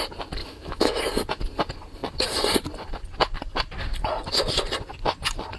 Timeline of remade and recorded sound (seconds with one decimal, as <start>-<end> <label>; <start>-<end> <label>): 0.0-0.4 recorded; 0.4-1.0 remade; 1.0-5.6 recorded